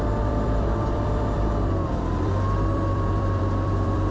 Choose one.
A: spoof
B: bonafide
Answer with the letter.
A